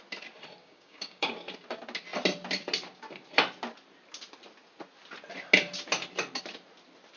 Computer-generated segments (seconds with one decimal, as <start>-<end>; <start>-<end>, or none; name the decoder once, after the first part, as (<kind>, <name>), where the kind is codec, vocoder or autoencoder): 0.6-1.3 (codec, DAC)